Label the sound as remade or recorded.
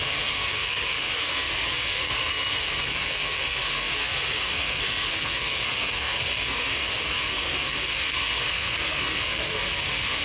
remade